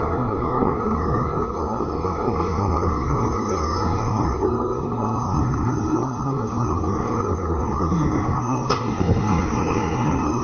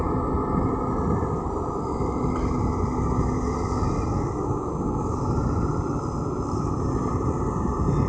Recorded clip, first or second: second